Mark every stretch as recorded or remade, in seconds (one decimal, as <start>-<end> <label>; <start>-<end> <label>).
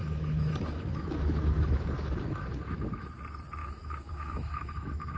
0.0-3.1 remade; 3.1-3.6 recorded; 3.6-5.2 remade